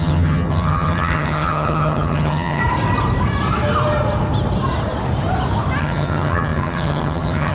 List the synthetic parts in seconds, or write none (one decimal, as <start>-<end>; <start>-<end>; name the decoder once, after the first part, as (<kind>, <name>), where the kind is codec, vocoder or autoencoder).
0.0-2.6 (vocoder, HiFi-GAN); 5.8-7.5